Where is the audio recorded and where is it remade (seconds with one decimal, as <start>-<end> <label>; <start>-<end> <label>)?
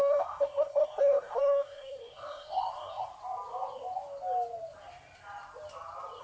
0.0-3.1 remade; 3.1-6.2 recorded